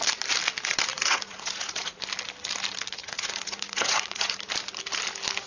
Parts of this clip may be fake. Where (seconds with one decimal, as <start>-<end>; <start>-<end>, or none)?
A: 0.9-2.0; 3.0-4.5